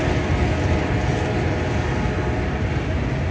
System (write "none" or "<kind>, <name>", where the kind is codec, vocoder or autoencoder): none